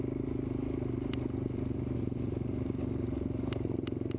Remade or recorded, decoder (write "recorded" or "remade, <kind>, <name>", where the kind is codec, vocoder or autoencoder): recorded